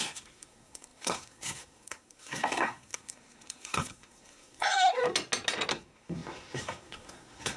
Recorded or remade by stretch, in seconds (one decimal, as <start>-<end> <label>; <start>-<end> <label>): 0.0-5.0 remade; 5.0-5.7 recorded; 5.7-7.6 remade

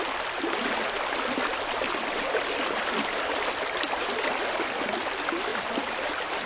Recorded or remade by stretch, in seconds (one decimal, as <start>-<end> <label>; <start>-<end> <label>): 0.0-6.5 recorded

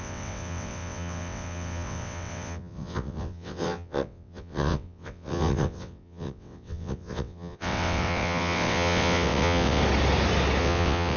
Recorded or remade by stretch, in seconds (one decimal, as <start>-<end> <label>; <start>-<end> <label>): 0.0-9.8 remade; 9.8-10.6 recorded; 10.6-11.2 remade

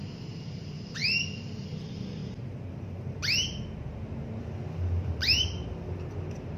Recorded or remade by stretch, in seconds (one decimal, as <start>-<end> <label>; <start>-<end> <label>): 0.0-2.2 remade; 2.2-2.7 recorded; 2.7-3.2 remade; 3.2-4.4 recorded; 4.4-6.6 remade

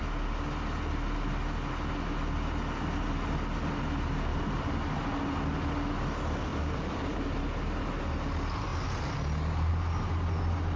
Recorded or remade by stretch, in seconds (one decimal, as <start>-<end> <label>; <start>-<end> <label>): 0.0-4.3 recorded; 4.3-5.0 remade; 5.0-6.5 recorded; 6.5-7.4 remade; 7.4-10.8 recorded